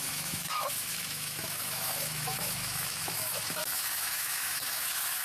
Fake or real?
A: fake